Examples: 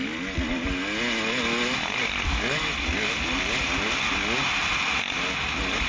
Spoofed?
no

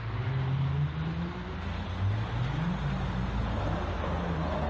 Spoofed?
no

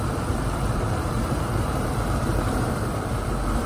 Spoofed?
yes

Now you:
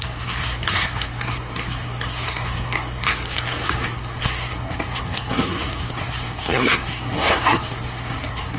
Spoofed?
yes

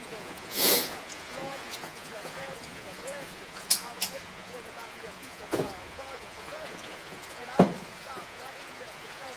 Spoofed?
yes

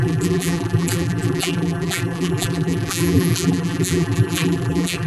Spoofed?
yes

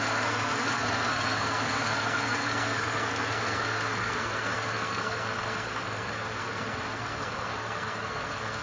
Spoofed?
yes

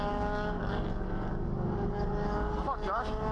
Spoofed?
yes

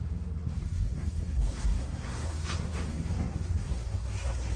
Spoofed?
yes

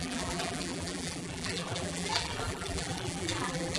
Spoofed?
yes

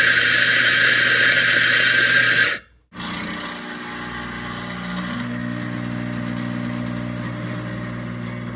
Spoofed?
no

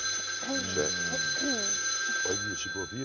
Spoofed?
no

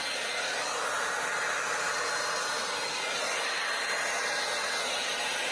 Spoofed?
no